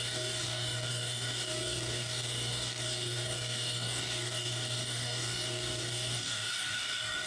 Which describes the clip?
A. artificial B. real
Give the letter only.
A